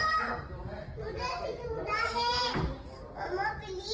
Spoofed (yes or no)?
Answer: no